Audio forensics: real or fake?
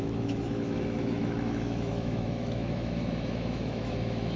fake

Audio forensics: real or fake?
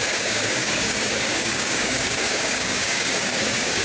fake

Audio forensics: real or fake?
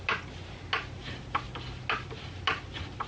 real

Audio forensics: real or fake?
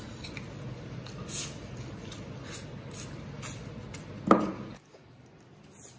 real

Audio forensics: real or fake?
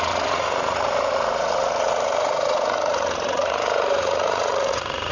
fake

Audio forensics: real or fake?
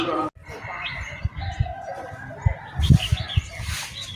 real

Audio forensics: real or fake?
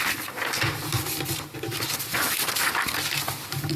real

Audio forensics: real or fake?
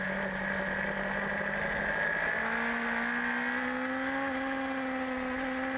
real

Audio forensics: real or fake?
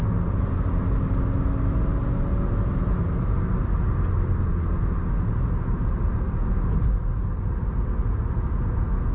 real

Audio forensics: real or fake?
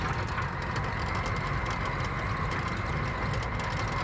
real